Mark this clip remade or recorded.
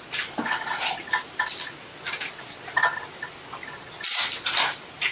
recorded